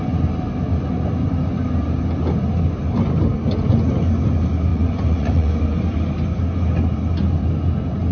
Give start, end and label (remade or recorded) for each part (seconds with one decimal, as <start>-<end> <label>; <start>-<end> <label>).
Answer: 0.0-4.7 recorded; 4.7-5.5 remade; 5.5-8.1 recorded